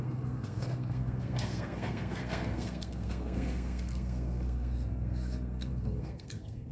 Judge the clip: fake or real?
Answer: fake